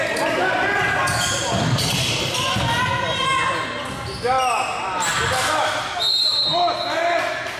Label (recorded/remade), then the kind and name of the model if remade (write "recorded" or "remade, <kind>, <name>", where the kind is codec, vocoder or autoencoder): recorded